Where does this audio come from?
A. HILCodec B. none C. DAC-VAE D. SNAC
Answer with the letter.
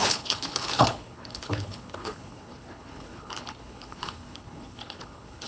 A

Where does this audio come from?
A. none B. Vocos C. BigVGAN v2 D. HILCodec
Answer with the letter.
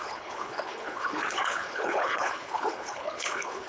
D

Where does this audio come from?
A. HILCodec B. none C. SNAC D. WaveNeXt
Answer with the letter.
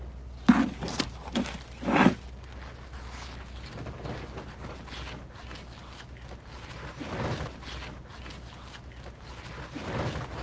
B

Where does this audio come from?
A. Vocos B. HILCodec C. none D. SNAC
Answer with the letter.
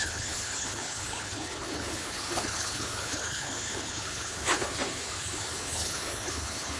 B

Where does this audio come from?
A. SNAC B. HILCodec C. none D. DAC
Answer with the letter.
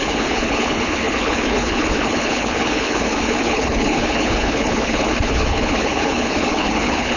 B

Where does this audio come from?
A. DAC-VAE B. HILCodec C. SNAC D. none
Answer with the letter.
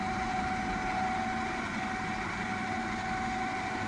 D